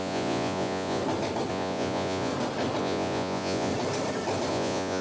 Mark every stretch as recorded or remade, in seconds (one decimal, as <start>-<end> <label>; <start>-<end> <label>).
0.0-1.0 remade; 1.0-1.5 recorded; 1.5-2.3 remade; 2.3-2.8 recorded; 2.8-3.7 remade; 3.7-4.5 recorded; 4.5-5.0 remade